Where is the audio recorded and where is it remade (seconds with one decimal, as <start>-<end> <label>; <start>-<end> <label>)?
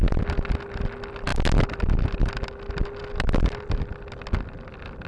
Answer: 0.0-5.1 recorded